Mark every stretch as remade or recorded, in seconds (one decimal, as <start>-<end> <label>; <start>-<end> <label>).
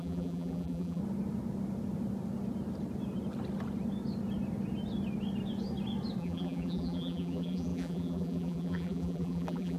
0.0-1.0 remade; 1.0-6.2 recorded; 6.2-9.8 remade